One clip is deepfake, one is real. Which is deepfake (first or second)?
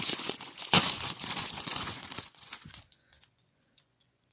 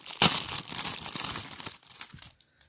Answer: first